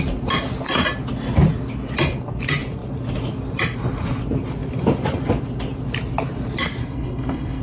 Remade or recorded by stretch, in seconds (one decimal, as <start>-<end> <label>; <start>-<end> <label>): 0.0-6.8 recorded; 6.8-7.6 remade